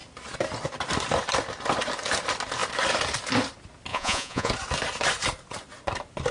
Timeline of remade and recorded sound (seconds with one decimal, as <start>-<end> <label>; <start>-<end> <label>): 0.0-3.9 recorded; 3.9-4.5 remade; 4.5-6.3 recorded